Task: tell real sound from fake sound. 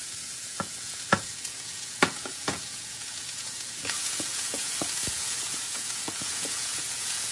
fake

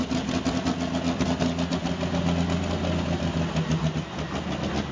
real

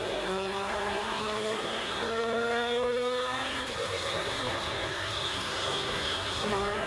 fake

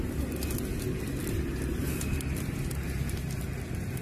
real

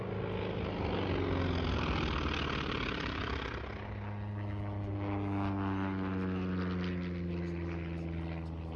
real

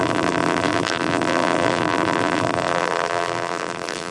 fake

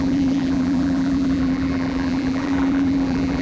fake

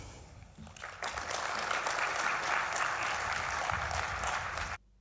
real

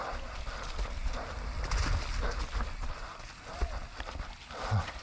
real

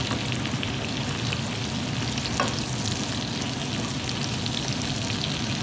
real